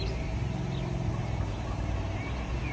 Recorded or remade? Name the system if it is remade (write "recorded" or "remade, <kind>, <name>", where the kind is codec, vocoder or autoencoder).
recorded